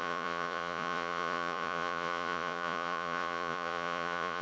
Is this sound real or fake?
fake